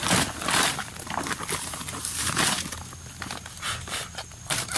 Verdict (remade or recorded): recorded